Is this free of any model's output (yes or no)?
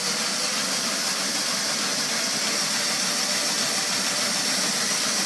yes